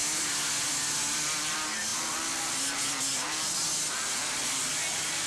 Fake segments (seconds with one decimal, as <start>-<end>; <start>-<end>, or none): none